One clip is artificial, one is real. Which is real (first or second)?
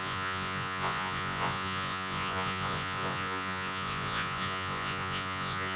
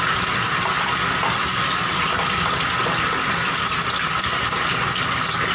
second